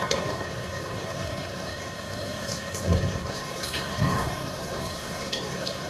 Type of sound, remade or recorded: remade